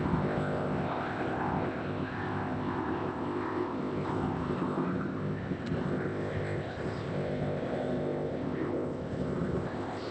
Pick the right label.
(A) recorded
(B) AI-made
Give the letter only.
B